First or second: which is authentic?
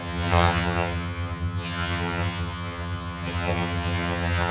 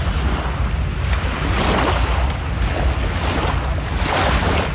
second